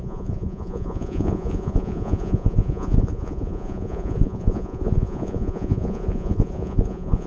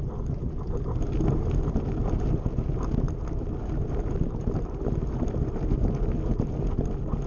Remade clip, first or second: first